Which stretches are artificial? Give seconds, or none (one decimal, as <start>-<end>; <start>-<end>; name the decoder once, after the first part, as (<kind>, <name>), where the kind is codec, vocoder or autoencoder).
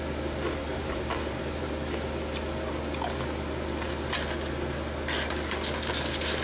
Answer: 0.6-1.7 (vocoder, BigVGAN v2)